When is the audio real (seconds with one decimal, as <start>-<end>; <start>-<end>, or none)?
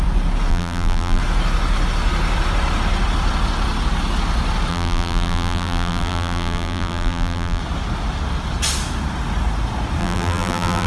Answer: 0.0-0.5; 1.2-4.7; 7.6-10.0